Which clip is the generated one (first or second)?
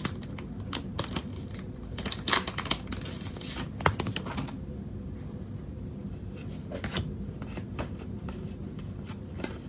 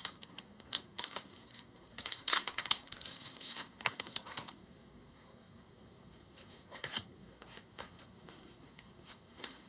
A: second